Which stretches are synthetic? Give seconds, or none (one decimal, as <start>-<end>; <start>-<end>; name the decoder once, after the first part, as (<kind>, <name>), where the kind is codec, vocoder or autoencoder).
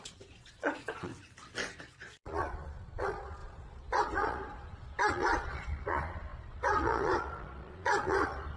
0.0-1.1 (vocoder, Vocos); 1.8-8.6